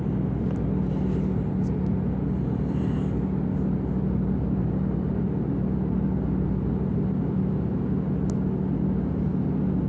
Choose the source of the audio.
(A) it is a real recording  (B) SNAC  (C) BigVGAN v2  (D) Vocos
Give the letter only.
A